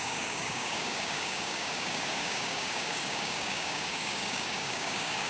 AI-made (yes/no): yes